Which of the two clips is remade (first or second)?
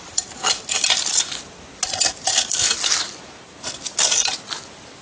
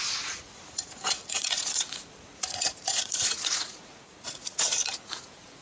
second